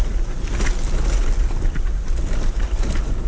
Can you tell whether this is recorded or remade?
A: recorded